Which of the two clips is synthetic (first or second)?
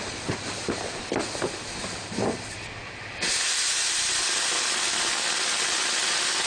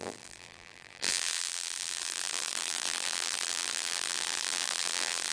second